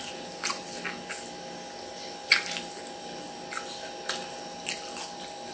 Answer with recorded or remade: recorded